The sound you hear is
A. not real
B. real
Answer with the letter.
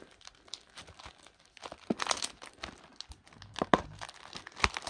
B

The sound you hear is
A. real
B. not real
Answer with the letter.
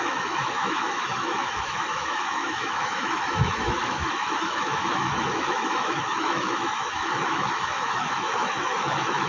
B